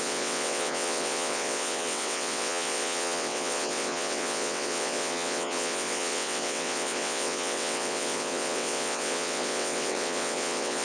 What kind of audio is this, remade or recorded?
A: remade